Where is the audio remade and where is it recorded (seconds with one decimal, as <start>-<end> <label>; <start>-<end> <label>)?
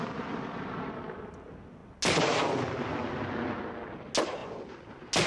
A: 0.0-5.3 recorded